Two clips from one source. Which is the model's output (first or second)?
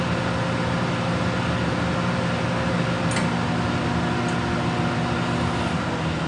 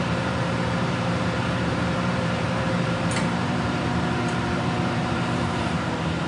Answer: second